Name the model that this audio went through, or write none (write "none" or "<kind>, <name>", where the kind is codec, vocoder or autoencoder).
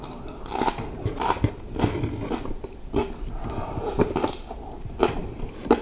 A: none